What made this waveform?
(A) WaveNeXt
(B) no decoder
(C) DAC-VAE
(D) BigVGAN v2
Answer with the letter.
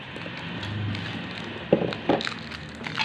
B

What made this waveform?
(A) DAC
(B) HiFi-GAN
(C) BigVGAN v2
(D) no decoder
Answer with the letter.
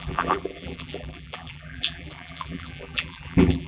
C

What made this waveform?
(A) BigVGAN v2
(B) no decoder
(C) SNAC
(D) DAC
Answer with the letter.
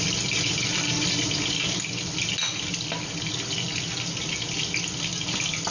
B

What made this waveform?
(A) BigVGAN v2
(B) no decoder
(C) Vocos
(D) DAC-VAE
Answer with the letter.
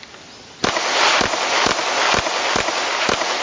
B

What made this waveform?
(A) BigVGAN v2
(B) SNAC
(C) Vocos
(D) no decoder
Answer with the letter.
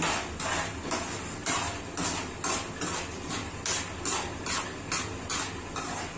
D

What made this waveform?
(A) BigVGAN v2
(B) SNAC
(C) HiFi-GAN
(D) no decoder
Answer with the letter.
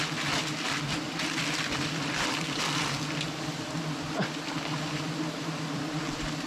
A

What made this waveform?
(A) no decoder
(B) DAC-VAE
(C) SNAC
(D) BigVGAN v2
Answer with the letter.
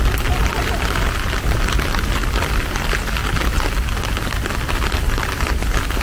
A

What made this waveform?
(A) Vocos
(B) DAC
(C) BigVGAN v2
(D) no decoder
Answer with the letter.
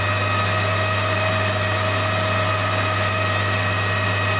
D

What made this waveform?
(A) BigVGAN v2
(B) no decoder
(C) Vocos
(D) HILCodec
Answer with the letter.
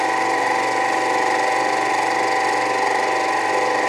B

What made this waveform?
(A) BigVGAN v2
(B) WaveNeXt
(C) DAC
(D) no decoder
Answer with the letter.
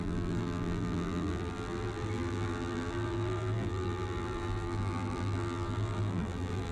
A